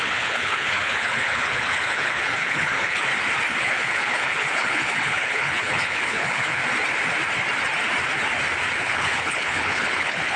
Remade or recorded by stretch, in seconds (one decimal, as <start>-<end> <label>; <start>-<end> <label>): 0.0-3.1 remade; 3.1-3.6 recorded; 3.6-6.6 remade; 6.6-8.8 recorded; 8.8-10.4 remade